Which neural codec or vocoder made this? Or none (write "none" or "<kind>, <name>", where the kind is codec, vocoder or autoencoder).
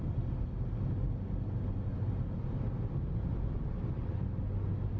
none